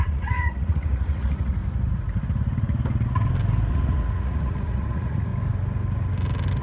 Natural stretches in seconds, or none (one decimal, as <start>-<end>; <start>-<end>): 1.6-3.7; 5.3-6.6